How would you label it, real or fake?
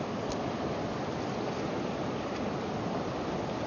real